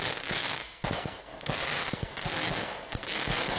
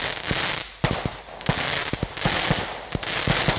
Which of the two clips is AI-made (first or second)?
first